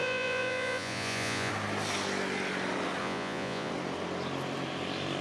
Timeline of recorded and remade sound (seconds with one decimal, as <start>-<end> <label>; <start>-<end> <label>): 0.0-1.5 remade; 1.5-3.0 recorded; 3.0-3.7 remade; 3.7-5.2 recorded